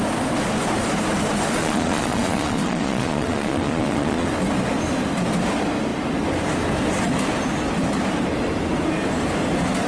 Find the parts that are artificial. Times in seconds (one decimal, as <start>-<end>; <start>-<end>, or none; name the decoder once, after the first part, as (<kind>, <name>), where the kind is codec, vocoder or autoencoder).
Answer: 1.6-4.3 (vocoder, Vocos)

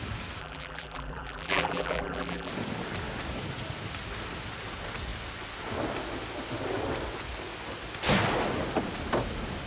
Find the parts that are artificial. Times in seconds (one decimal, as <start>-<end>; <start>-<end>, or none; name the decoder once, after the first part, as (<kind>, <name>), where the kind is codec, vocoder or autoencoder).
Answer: 0.4-2.5 (vocoder, BigVGAN v2)

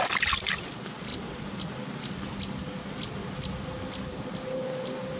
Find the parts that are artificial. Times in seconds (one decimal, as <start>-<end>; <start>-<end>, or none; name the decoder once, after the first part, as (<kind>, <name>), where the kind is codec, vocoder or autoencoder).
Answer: none

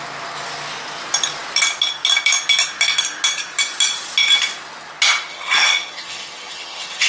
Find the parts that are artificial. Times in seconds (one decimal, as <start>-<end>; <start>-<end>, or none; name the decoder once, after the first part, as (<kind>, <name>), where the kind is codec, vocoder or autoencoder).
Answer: 5.3-7.1 (vocoder, HiFi-GAN)

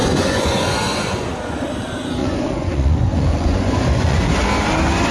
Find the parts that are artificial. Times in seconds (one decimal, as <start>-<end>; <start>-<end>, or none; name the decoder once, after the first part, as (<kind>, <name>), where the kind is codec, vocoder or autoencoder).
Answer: 0.0-1.4 (vocoder, Vocos); 2.2-4.3